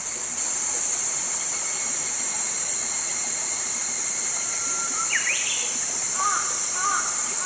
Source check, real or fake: real